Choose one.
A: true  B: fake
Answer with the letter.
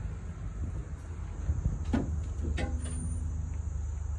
A